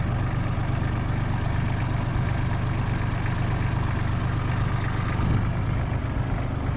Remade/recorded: recorded